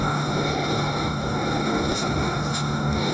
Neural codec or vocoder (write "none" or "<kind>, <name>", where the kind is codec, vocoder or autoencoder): codec, DAC